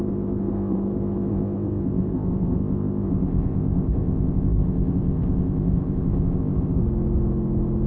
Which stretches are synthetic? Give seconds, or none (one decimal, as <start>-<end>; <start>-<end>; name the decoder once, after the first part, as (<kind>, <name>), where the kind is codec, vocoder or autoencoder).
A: 0.0-6.8 (codec, ZipCodec)